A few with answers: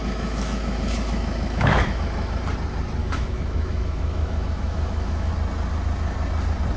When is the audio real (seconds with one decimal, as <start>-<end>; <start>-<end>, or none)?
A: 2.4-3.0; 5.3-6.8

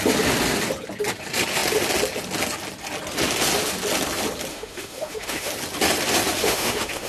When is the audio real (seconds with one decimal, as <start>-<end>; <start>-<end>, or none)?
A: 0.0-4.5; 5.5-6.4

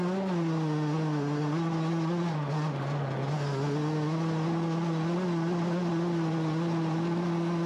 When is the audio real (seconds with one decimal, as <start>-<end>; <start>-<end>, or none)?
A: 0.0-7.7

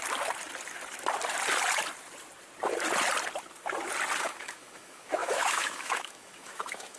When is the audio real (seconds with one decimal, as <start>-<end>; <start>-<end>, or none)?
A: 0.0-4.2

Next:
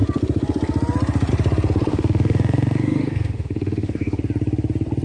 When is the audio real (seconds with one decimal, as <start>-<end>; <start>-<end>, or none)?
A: 0.0-1.9; 4.2-5.0